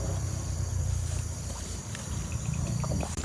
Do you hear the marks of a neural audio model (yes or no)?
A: yes